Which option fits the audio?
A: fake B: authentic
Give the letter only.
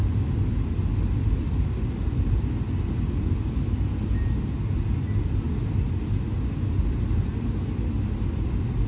B